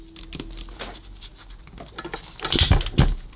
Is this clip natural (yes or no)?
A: yes